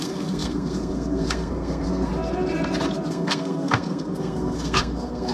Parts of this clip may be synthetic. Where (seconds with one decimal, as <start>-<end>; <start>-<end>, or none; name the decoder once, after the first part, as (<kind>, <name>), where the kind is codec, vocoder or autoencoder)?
0.0-2.1 (codec, SNAC); 3.1-5.3